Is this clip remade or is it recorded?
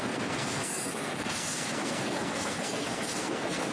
remade